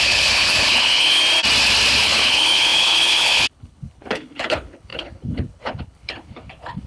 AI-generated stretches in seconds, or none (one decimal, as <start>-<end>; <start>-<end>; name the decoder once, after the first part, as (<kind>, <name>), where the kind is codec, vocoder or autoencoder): 0.0-1.2 (codec, HILCodec); 2.0-6.9